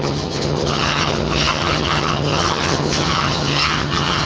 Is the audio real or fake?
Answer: fake